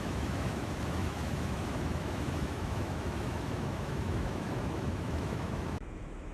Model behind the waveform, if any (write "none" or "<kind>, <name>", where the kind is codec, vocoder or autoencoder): autoencoder, DAC-VAE